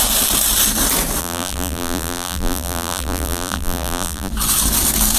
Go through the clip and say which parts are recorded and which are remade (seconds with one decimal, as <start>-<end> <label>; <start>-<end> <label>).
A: 0.0-1.2 recorded; 1.2-4.3 remade; 4.3-5.2 recorded